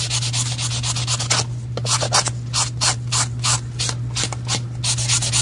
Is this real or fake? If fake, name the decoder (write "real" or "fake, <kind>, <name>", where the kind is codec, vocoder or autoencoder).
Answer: real